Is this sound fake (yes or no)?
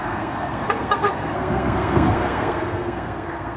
yes